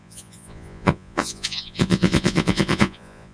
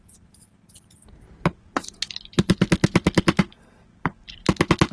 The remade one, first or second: first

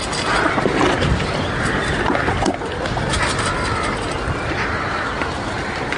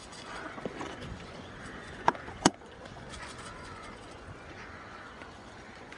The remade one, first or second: second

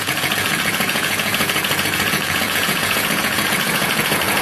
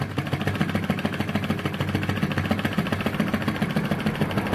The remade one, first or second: first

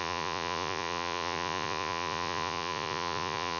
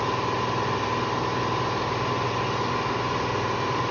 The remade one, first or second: first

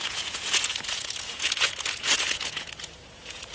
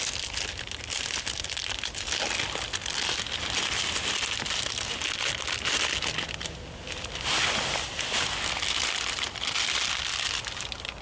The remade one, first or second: first